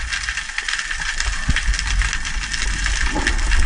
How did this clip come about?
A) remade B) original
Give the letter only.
B